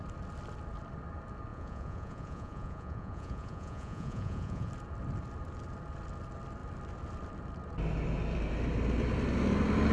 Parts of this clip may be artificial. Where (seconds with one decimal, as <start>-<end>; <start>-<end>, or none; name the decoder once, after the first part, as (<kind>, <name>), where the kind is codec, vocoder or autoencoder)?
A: 1.5-4.7 (vocoder, Vocos)